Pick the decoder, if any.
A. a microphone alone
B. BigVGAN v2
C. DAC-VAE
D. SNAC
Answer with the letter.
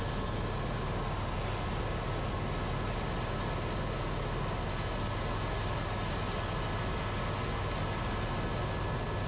A